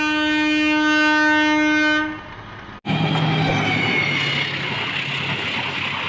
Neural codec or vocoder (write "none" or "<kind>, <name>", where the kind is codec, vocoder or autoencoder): none